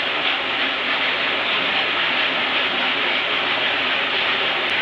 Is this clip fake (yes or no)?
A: no